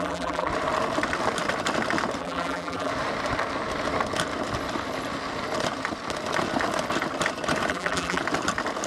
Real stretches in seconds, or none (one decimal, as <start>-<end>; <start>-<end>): 0.5-2.2; 2.9-7.7; 8.2-8.9